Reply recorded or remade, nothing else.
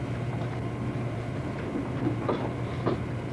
remade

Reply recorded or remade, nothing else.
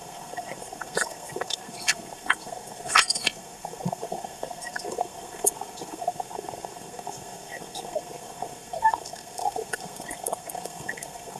remade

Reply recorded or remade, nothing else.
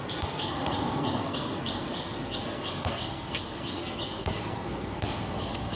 remade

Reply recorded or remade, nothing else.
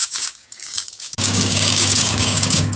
remade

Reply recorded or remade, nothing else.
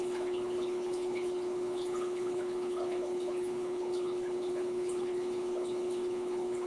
remade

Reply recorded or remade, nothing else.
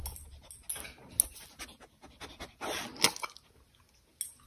recorded